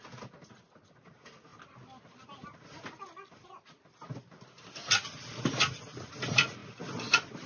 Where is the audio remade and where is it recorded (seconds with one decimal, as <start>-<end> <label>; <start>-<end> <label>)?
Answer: 0.0-7.5 recorded